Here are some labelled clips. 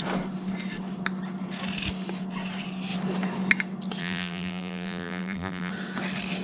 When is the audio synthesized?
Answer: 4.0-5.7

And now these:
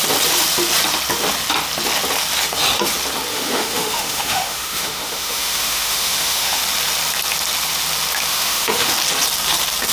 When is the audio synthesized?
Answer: 3.3-6.6; 8.3-8.9

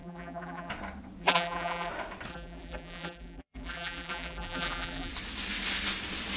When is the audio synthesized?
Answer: 0.0-0.7; 1.2-1.9; 2.3-5.1

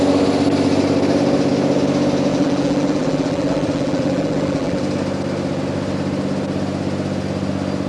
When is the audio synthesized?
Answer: 2.3-4.8

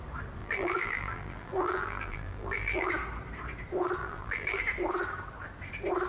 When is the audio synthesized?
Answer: 0.4-2.9; 4.0-4.6

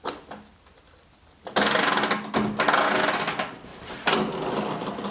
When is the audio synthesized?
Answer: 3.7-4.3

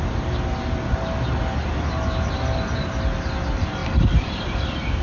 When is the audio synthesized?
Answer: none

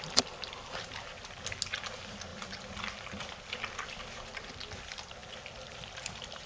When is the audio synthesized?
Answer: none